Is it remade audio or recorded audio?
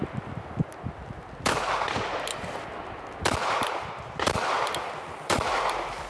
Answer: recorded